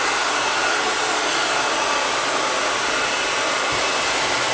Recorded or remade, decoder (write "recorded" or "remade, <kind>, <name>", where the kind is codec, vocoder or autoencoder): recorded